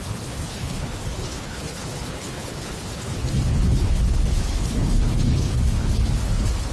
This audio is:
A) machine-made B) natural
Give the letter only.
A